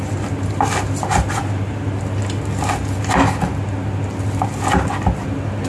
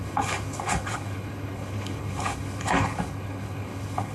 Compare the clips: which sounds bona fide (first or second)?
first